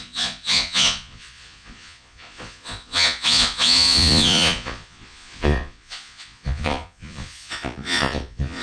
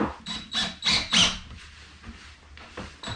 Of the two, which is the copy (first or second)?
first